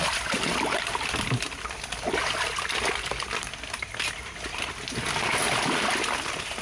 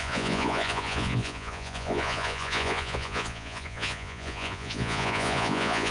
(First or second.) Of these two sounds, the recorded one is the first